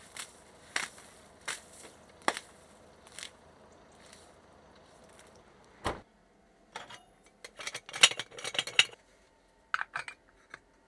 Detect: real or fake real